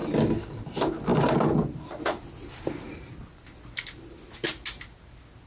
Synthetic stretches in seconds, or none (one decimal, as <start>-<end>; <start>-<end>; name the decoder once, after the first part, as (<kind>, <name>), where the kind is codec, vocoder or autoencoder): none